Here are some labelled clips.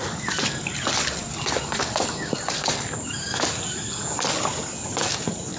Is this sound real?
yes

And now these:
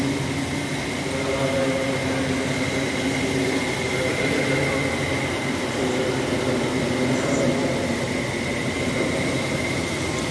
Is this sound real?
yes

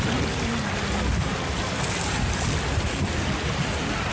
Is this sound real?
yes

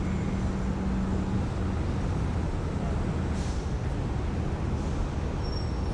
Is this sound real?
yes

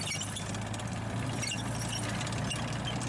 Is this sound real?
yes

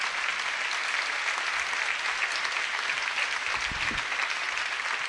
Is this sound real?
yes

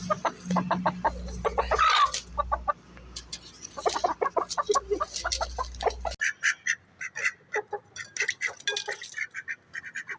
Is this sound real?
yes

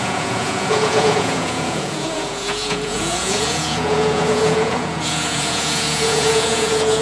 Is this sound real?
no